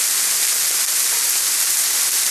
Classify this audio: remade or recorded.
recorded